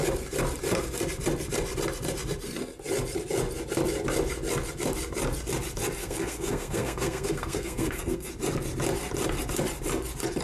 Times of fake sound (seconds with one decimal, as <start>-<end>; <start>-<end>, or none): 6.0-8.3